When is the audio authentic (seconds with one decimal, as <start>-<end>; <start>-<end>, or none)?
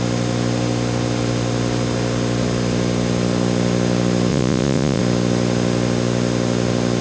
0.0-4.3; 5.0-7.0